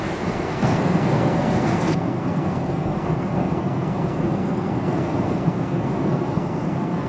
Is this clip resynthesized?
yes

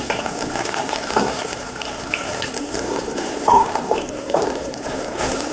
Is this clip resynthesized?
yes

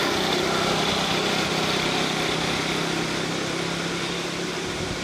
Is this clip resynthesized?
no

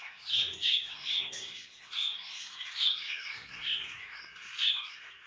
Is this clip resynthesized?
yes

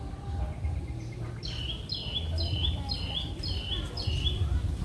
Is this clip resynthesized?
no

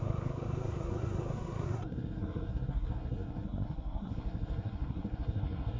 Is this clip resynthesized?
yes